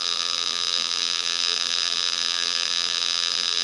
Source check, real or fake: fake